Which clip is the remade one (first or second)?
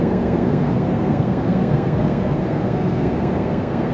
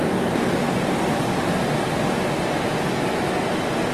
first